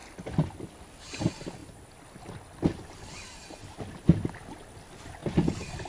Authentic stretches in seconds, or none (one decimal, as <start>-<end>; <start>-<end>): 0.0-5.9